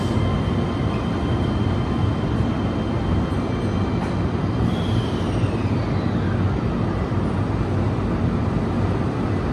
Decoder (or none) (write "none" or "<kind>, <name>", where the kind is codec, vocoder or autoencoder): none